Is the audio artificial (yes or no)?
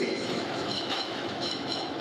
yes